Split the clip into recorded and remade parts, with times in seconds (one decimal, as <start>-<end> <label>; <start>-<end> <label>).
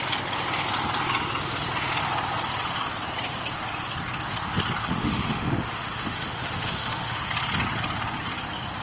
0.0-4.8 recorded; 4.8-7.3 remade; 7.3-8.8 recorded